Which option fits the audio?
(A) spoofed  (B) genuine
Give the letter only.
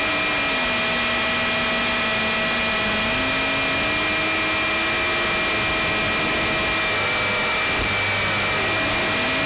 B